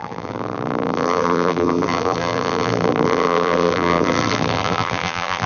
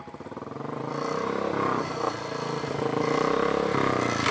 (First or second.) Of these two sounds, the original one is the second